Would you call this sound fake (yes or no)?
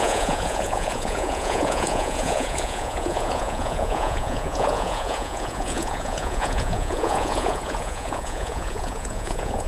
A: yes